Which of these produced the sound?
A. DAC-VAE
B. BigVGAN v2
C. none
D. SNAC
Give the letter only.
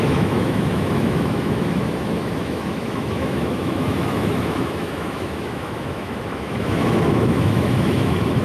A